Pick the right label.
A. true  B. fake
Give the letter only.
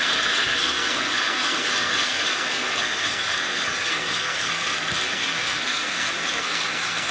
B